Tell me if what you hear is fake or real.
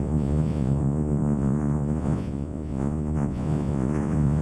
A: fake